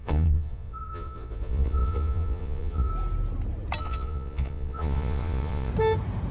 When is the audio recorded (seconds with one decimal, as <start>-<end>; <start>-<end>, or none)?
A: 2.9-3.8; 5.7-6.3